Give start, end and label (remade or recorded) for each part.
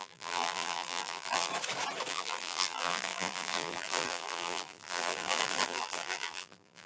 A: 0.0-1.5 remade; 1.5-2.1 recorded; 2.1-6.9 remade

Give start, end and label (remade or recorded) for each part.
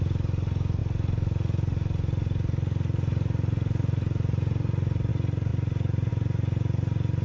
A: 0.0-5.5 recorded; 5.5-6.1 remade; 6.1-7.2 recorded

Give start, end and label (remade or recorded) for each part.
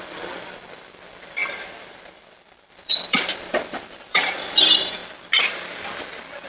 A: 0.0-5.0 remade; 5.0-6.5 recorded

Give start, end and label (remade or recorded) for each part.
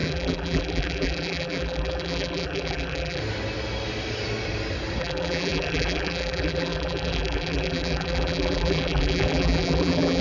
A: 0.0-3.2 remade; 3.2-5.0 recorded; 5.0-10.2 remade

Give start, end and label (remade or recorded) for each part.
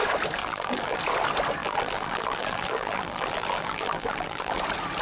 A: 0.0-0.4 recorded; 0.4-1.0 remade; 1.0-1.6 recorded; 1.6-4.6 remade; 4.6-5.0 recorded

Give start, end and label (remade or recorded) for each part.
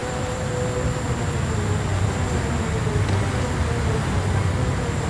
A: 0.0-0.5 remade; 0.5-5.1 recorded